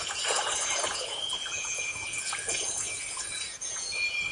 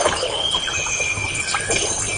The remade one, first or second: first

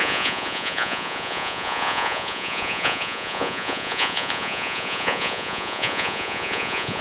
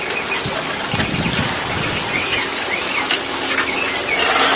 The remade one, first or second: first